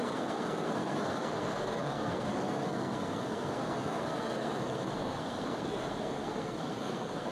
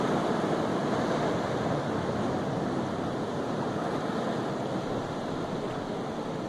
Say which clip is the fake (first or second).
first